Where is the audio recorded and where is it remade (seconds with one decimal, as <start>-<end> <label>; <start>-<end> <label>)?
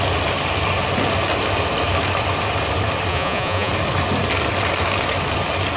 0.0-3.1 recorded; 3.1-3.7 remade; 3.7-5.8 recorded